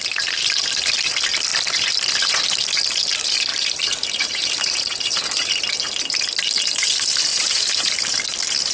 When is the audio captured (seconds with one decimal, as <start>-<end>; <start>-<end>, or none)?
0.0-3.5; 5.6-7.3; 7.9-8.7